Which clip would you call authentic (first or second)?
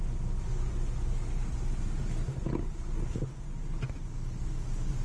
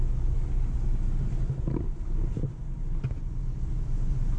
first